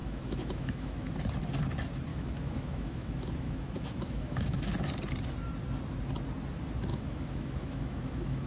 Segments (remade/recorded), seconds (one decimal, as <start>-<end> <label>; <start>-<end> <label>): 0.0-1.1 remade; 1.1-2.1 recorded; 2.1-4.7 remade; 4.7-6.9 recorded; 6.9-8.5 remade